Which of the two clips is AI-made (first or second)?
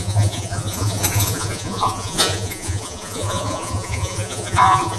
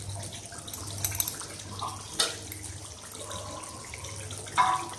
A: first